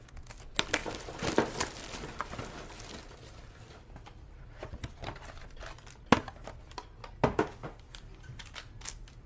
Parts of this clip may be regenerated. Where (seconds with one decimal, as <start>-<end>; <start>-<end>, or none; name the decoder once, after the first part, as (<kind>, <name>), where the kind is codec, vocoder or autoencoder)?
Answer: 0.8-6.0 (vocoder, BigVGAN v2)